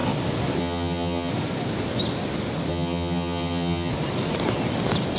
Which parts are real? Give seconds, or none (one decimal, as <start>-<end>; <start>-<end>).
0.0-0.6; 1.3-2.7; 3.9-5.2